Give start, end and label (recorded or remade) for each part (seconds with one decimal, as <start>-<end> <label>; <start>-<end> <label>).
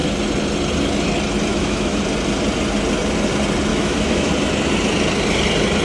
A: 0.0-1.5 recorded; 1.5-2.0 remade; 2.0-3.7 recorded; 3.7-4.3 remade; 4.3-5.8 recorded